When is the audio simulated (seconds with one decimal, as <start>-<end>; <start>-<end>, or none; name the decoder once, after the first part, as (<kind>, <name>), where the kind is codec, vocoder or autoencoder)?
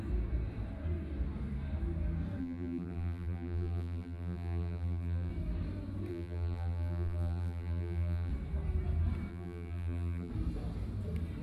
2.4-5.3 (vocoder, BigVGAN v2); 6.1-8.3; 9.3-10.3